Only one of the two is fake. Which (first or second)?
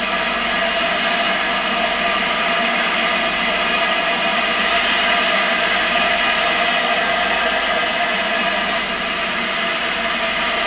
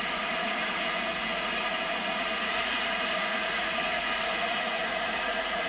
second